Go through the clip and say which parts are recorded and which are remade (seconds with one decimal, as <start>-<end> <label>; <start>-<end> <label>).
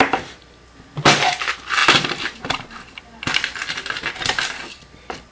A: 0.0-5.3 recorded